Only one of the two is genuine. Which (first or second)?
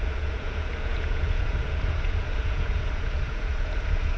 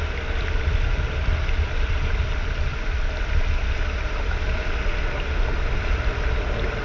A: second